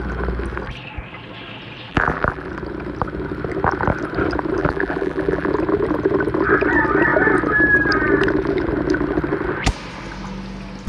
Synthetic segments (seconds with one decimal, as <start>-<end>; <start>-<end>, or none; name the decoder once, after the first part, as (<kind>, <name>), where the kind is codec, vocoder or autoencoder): 1.9-2.5 (vocoder, BigVGAN v2); 4.6-5.5